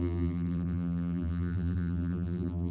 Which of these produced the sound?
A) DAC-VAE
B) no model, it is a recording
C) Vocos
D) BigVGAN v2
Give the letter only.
D